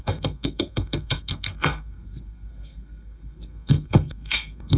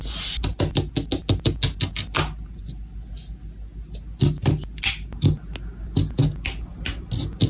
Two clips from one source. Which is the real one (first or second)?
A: second